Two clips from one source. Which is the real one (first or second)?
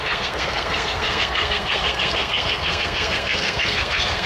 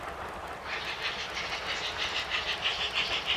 second